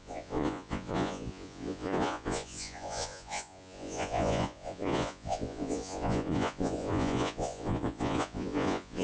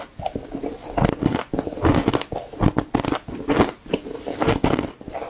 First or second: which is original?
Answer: second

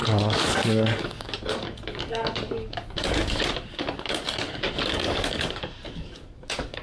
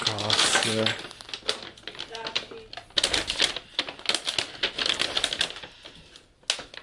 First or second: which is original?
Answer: second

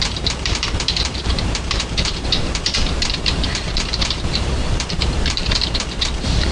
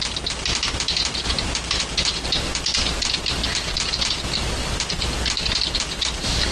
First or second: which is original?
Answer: second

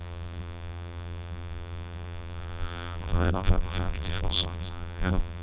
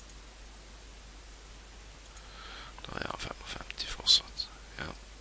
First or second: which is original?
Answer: second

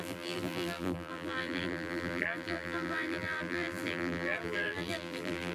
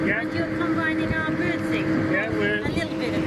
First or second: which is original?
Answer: second